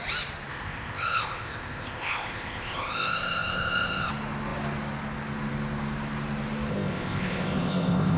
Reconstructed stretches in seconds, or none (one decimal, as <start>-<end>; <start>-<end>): 0.5-4.1; 6.7-8.2